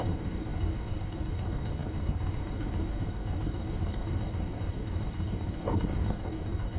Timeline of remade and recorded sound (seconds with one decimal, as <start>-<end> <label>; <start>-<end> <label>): 0.0-6.8 remade